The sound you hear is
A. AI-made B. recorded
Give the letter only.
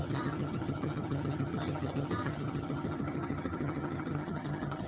A